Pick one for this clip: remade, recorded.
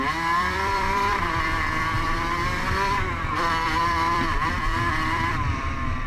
remade